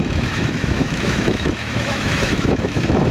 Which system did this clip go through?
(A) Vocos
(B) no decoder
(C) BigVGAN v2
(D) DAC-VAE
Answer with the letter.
D